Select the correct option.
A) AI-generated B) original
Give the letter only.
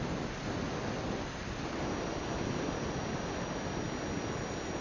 B